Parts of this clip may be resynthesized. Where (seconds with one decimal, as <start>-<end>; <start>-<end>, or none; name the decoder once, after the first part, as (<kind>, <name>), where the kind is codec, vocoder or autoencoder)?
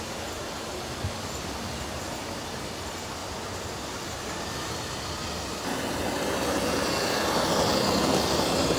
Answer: none